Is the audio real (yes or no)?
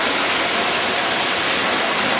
yes